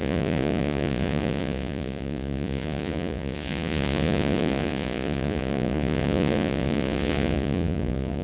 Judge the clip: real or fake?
fake